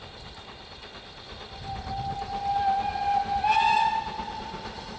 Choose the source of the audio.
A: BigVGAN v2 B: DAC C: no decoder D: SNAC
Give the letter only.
C